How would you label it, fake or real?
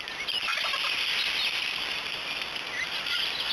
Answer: fake